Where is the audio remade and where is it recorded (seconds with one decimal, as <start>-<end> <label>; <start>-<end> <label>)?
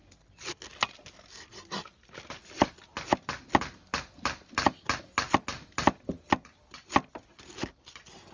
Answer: 0.0-8.3 recorded